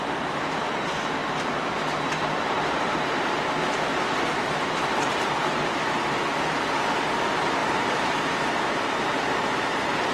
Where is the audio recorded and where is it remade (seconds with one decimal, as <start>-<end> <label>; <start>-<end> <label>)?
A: 0.0-1.2 recorded; 1.2-5.6 remade; 5.6-7.6 recorded; 7.6-10.1 remade